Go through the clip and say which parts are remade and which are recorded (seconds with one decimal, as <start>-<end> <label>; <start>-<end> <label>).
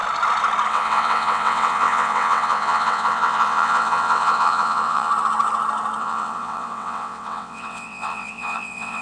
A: 0.0-0.7 recorded; 0.7-5.1 remade; 5.1-6.0 recorded; 6.0-9.0 remade